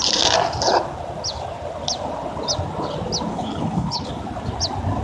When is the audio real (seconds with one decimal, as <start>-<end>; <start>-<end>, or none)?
0.0-3.3; 4.1-5.0